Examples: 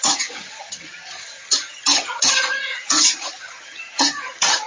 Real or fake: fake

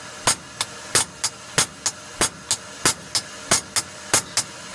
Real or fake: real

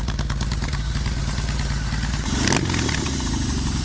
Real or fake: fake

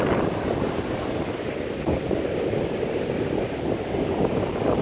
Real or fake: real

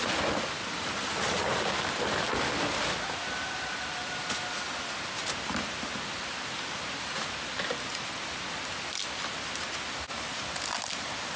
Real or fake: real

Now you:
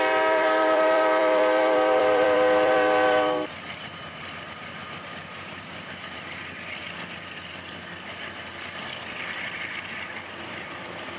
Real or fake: fake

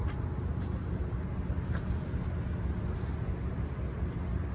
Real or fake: real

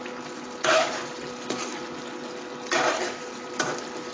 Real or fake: real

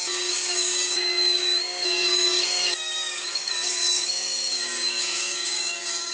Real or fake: fake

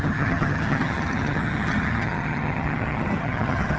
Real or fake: fake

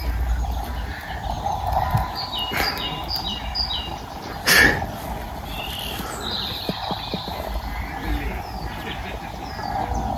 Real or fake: real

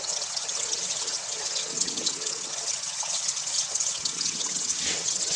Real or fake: fake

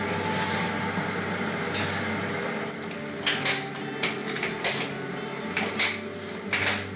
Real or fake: real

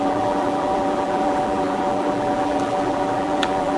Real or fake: fake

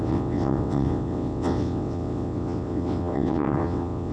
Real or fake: fake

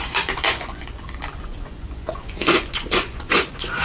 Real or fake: fake